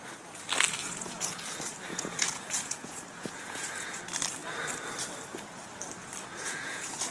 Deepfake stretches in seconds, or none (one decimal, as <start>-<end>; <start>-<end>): 0.8-1.4; 1.9-4.0; 6.3-7.1